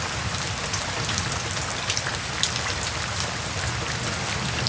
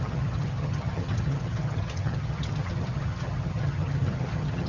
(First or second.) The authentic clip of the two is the first